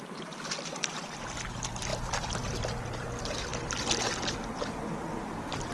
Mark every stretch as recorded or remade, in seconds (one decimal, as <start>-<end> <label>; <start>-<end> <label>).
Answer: 0.0-5.7 recorded